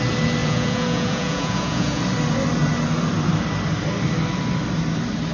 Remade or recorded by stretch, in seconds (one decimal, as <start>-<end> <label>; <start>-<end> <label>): 0.0-0.4 recorded; 0.4-2.0 remade; 2.0-5.3 recorded